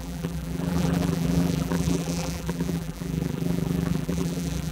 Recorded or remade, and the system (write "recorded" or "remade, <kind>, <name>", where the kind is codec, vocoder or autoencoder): remade, vocoder, BigVGAN v2